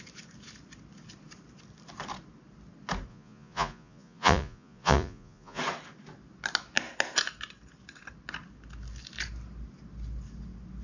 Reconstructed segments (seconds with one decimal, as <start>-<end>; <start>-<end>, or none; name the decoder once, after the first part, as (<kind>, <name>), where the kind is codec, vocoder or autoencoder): 3.1-5.6 (vocoder, Vocos)